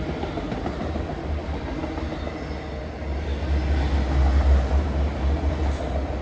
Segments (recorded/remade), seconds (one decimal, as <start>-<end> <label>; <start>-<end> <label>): 0.0-6.2 recorded